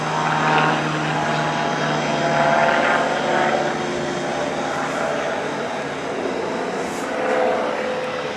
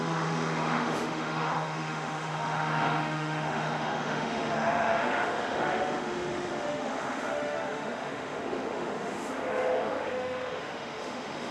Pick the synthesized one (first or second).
second